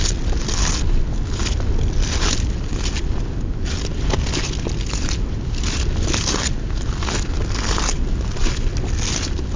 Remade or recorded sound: recorded